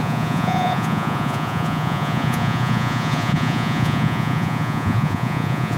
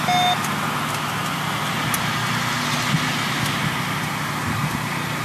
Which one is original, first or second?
second